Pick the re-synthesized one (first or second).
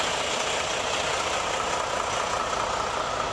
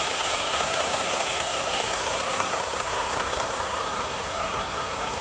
second